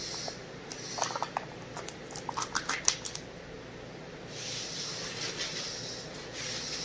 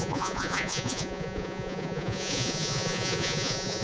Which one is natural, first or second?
first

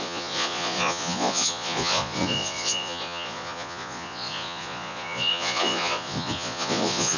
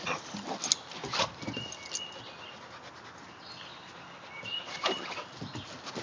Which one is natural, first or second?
second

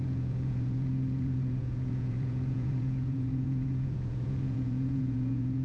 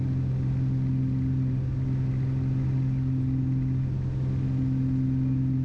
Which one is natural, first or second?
second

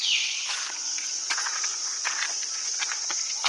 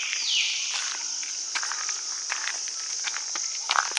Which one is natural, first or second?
second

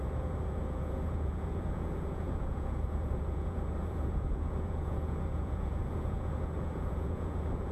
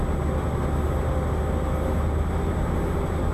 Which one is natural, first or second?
second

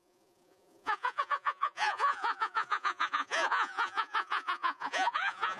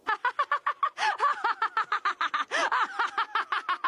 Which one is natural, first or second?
second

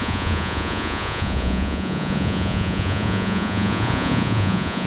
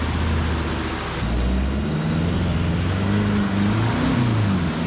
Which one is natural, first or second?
second